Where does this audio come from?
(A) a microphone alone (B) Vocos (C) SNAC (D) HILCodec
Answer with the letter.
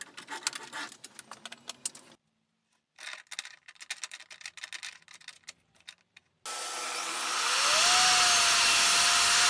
A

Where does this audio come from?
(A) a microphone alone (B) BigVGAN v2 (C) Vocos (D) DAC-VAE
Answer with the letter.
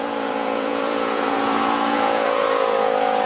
C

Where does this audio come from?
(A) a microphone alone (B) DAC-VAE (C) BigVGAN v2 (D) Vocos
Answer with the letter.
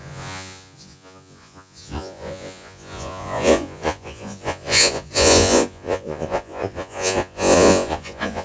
D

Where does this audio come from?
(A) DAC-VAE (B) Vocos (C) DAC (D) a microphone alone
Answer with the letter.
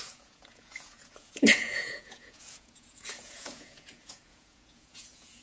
B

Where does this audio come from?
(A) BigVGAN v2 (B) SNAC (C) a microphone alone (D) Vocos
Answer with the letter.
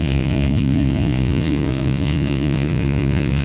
D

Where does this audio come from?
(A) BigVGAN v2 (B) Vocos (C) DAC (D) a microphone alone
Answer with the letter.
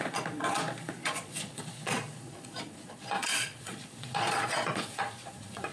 B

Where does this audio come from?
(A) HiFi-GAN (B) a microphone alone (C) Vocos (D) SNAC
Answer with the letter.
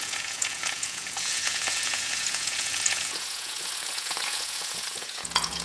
C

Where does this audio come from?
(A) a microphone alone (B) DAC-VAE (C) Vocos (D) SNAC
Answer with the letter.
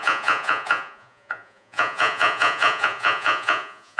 C